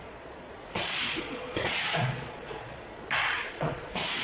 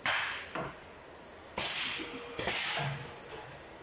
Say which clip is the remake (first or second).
first